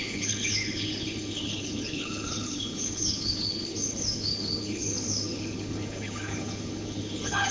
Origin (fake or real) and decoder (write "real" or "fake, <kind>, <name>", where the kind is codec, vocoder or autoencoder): fake, codec, HILCodec